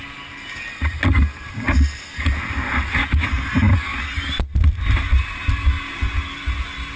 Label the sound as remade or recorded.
recorded